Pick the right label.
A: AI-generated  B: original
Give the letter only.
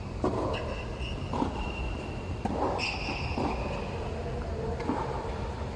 B